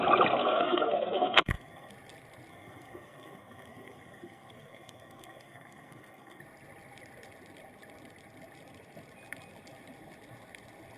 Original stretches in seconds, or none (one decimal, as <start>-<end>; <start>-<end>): 0.0-0.4; 1.9-2.5; 6.4-11.0

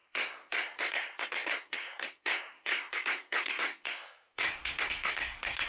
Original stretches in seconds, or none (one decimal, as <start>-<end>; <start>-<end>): none

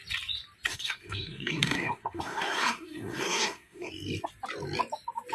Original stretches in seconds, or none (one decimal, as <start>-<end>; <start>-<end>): 0.0-0.7; 3.9-5.3

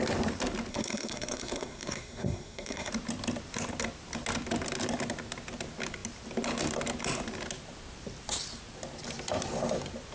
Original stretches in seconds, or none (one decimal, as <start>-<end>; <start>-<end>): 0.0-0.7; 2.9-10.1

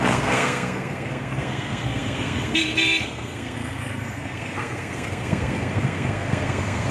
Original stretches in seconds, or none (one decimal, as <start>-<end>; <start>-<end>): none

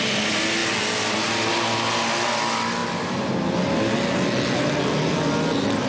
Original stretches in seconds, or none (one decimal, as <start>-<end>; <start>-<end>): 0.0-5.9

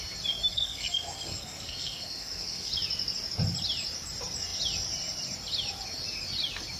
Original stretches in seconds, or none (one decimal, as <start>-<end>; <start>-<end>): 0.0-0.5; 2.7-6.8

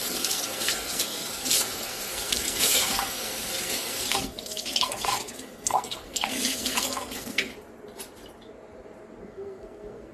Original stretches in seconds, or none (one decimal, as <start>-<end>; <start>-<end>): 7.5-9.2